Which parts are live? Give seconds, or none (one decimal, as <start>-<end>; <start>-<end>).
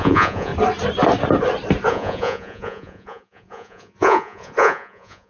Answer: 0.5-1.9